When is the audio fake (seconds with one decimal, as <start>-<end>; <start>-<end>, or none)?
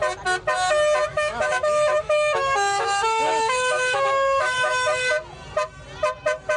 1.1-5.1